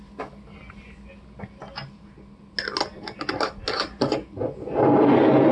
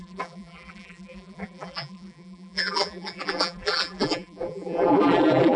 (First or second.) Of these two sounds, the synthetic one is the second